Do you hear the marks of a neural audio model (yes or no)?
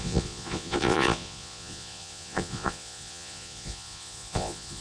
yes